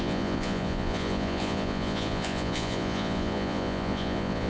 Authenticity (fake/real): fake